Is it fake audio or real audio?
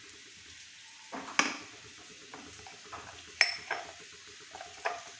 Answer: real